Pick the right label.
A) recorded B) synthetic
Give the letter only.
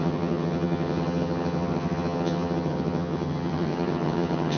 B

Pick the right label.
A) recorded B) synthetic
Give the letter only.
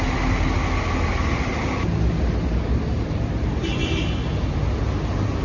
A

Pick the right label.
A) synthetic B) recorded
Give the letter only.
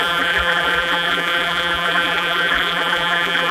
A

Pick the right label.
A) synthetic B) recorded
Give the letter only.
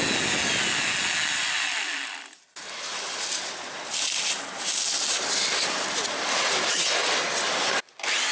B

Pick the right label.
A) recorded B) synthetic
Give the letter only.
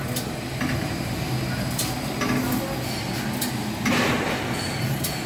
A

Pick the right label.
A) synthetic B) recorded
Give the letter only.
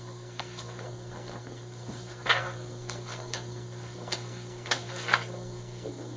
A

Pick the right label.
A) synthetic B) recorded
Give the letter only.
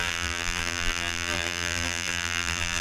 A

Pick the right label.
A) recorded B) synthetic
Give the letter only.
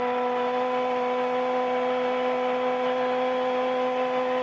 A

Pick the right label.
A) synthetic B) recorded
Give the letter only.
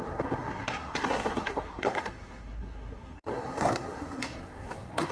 A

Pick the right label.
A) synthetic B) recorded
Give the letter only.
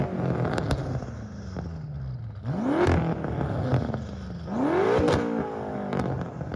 B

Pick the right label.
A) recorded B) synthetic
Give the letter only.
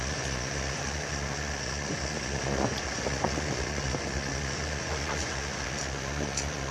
B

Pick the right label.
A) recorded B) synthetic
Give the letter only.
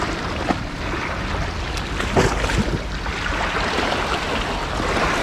A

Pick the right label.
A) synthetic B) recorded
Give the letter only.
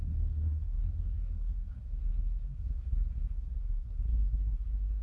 A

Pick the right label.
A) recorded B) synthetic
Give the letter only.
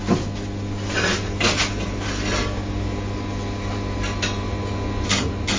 A